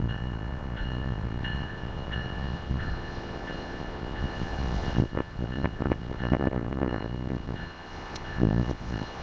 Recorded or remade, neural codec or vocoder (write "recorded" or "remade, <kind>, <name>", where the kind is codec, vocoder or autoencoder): remade, vocoder, Vocos